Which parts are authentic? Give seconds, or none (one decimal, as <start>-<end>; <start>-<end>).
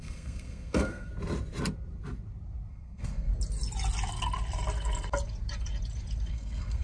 1.1-2.7; 3.3-6.3